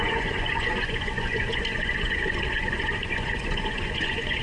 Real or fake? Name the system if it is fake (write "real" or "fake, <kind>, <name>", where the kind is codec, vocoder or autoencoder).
fake, vocoder, Vocos